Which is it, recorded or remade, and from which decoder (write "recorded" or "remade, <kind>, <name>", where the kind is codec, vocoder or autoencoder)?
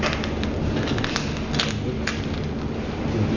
recorded